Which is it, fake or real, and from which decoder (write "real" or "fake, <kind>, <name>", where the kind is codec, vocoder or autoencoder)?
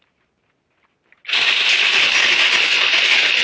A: real